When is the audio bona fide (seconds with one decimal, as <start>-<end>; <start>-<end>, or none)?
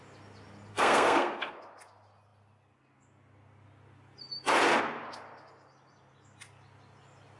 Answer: 0.0-0.7; 1.6-7.4